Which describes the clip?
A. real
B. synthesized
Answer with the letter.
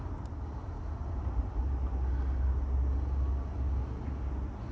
A